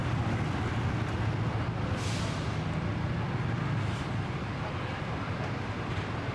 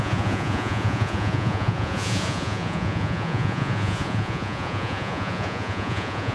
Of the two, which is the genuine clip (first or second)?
first